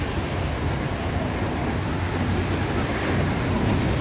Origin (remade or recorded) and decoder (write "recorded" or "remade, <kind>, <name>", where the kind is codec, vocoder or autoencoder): recorded